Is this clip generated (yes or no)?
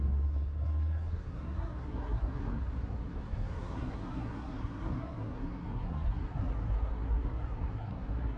yes